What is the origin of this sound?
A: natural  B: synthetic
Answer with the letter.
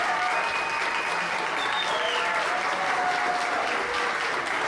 A